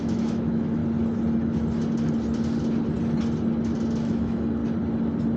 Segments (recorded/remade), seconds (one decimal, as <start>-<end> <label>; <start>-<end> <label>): 0.0-0.8 remade; 0.8-4.0 recorded; 4.0-4.6 remade; 4.6-5.4 recorded